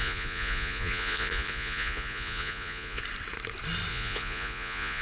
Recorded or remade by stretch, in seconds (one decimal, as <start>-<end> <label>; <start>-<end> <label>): 0.0-3.0 remade; 3.0-3.9 recorded; 3.9-5.0 remade